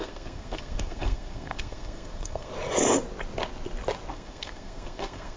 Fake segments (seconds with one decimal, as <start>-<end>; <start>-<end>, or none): 0.0-2.5; 4.1-5.4